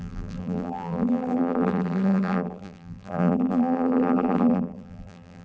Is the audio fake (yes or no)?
yes